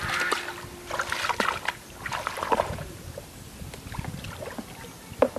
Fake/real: real